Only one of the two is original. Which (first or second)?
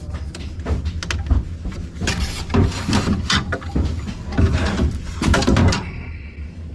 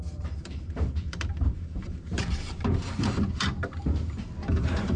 first